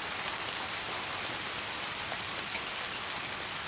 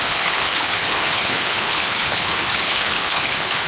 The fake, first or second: second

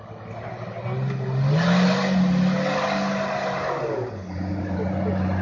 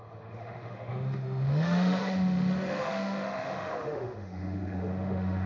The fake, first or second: second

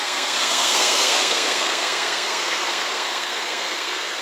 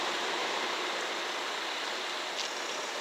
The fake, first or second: first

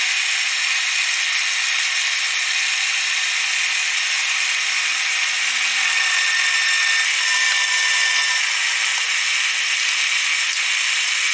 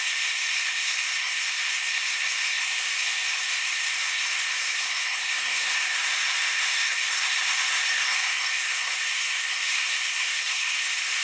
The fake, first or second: second